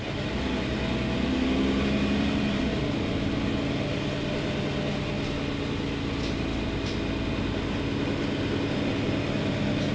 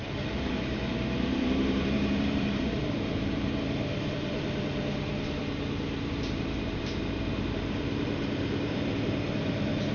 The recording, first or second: first